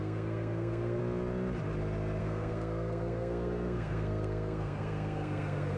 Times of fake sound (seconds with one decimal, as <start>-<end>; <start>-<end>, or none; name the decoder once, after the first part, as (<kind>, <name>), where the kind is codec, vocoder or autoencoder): 0.0-1.0 (codec, SNAC); 2.2-5.8